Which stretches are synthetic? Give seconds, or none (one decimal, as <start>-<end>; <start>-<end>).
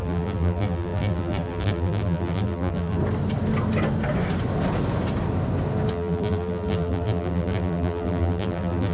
0.0-3.0; 5.9-8.9